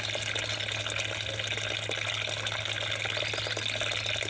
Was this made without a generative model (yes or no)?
yes